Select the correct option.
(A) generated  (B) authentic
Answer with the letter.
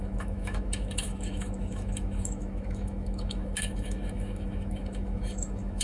A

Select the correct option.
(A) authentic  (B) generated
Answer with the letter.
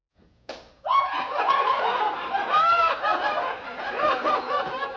A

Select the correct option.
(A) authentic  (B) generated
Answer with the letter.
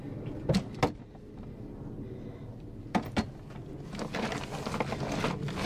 A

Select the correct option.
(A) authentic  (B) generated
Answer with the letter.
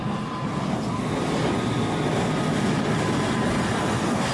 A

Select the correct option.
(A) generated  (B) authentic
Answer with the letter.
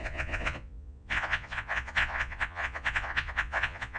A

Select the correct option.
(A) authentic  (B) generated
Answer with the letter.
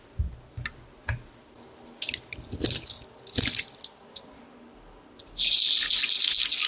A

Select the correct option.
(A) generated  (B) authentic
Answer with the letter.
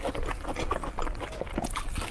B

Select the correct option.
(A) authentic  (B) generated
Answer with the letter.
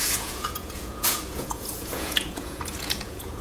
B